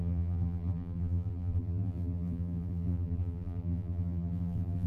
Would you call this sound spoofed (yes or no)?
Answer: yes